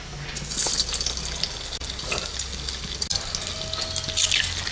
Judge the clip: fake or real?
real